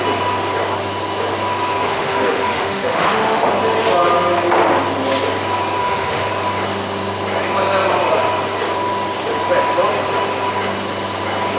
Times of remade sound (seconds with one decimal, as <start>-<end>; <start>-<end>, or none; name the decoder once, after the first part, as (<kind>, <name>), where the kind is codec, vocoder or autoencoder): 1.9-3.5 (autoencoder, DAC-VAE); 5.8-6.3